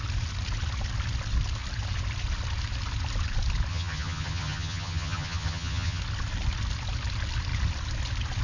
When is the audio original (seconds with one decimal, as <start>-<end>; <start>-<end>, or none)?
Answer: 0.0-3.7; 6.0-8.4